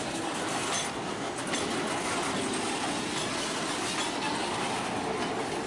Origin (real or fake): real